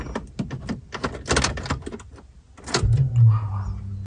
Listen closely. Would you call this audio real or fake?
real